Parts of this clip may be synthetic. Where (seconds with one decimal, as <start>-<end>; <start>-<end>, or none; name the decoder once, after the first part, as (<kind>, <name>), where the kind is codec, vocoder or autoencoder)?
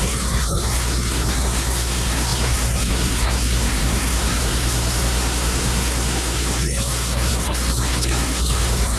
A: 0.0-9.0 (codec, SNAC)